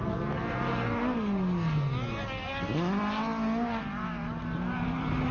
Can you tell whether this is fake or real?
real